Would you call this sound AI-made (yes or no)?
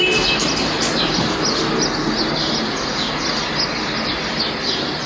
no